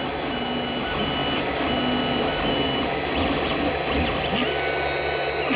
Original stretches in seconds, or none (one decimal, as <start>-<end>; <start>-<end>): 0.0-5.6